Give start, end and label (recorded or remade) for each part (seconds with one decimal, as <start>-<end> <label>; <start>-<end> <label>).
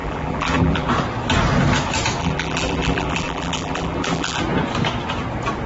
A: 0.0-0.9 remade; 0.9-2.2 recorded; 2.2-4.4 remade; 4.4-5.7 recorded